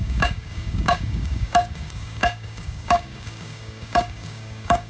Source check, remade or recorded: remade